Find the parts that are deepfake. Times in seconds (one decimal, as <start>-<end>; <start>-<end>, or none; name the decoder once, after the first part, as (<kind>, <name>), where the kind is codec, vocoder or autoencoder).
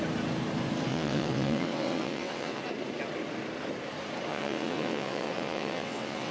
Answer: 0.9-2.6 (vocoder, WaveNeXt); 4.3-6.3